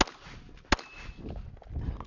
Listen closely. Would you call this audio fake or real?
real